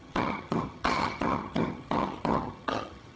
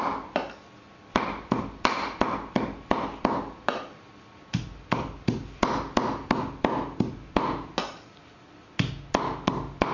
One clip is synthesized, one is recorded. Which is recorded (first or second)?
second